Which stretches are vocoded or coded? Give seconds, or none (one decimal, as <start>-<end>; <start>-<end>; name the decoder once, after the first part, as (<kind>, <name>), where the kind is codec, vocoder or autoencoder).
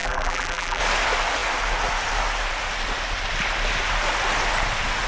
0.0-0.8 (vocoder, BigVGAN v2)